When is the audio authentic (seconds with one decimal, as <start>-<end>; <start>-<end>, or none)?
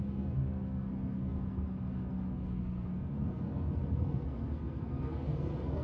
none